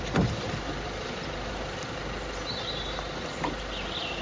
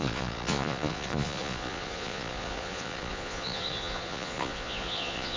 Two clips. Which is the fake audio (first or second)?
second